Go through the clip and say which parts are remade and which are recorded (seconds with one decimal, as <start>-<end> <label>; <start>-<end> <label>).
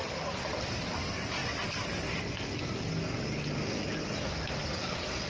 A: 0.0-5.3 recorded